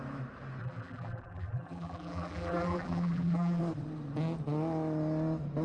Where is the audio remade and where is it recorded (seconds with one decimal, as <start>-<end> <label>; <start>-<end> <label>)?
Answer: 0.0-0.6 recorded; 0.6-3.6 remade; 3.6-5.6 recorded